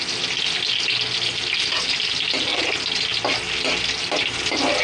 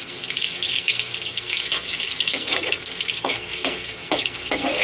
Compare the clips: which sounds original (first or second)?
first